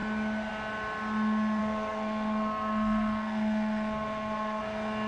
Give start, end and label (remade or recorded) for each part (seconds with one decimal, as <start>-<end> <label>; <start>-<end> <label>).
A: 0.0-1.6 recorded; 1.6-4.6 remade; 4.6-5.1 recorded